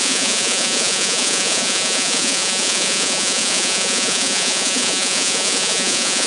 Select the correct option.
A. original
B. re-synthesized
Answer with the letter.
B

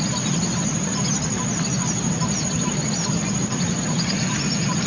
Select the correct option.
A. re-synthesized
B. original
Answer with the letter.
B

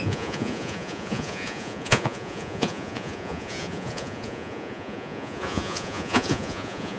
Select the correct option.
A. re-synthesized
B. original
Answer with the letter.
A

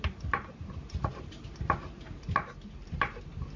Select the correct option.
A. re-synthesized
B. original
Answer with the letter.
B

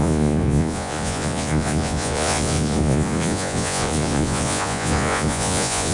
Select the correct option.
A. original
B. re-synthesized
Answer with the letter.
B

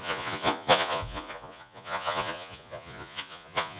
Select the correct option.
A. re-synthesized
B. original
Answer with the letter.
A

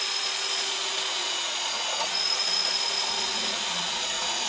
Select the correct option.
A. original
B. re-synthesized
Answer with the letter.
B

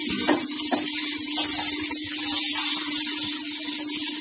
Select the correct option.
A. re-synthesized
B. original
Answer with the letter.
B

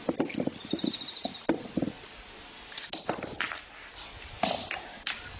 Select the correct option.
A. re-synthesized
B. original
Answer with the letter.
B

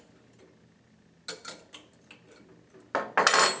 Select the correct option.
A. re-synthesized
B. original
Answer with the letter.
B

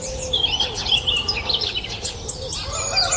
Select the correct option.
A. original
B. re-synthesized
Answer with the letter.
A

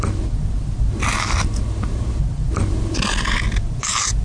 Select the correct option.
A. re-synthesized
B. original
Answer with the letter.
B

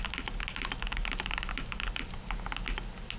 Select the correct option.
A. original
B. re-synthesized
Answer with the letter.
A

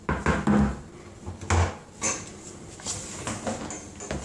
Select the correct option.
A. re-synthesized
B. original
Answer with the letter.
B